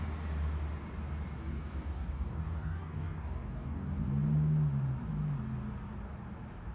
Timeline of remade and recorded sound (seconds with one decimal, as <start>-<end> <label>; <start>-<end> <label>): 0.0-1.4 recorded; 1.4-3.9 remade; 3.9-6.7 recorded